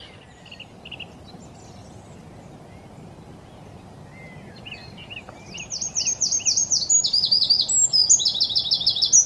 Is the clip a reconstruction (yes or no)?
no